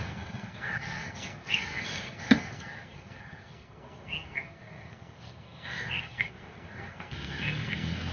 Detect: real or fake fake